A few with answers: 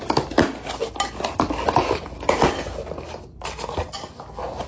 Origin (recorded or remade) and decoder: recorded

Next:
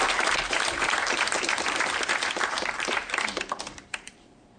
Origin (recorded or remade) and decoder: remade, vocoder, BigVGAN v2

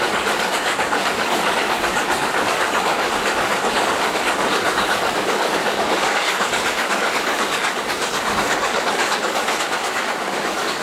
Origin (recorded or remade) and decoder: remade, codec, DAC